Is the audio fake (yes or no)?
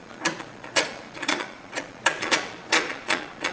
yes